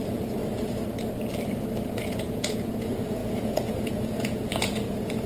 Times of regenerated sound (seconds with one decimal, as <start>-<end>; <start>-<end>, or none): 0.0-0.4; 1.9-5.3